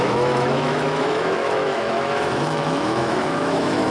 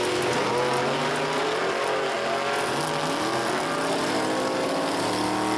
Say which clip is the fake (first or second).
first